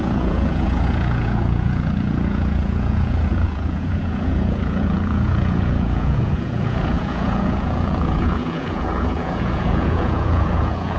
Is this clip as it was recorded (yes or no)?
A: no